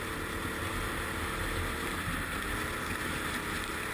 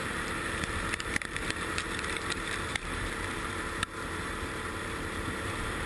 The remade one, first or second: second